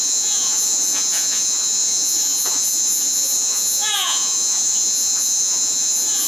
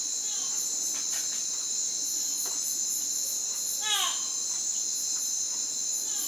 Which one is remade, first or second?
first